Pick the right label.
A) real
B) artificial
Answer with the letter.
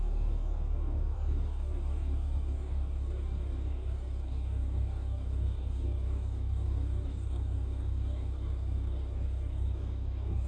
B